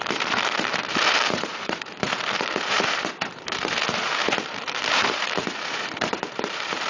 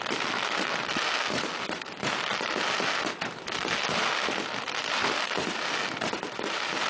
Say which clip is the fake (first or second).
first